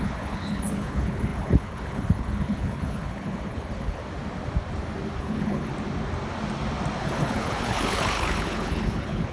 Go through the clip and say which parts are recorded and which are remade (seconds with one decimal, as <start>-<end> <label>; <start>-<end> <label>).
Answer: 0.0-4.0 remade; 4.0-5.2 recorded; 5.2-5.7 remade; 5.7-7.0 recorded; 7.0-9.3 remade